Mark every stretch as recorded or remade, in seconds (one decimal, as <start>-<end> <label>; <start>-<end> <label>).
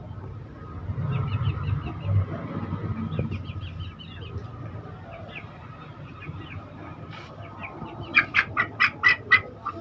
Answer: 0.0-4.4 recorded; 4.4-8.8 remade; 8.8-9.8 recorded